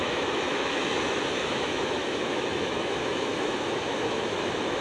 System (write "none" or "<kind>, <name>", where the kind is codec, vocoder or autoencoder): autoencoder, DAC-VAE